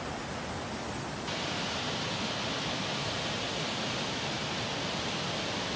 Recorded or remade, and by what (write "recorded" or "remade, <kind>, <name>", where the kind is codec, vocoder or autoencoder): recorded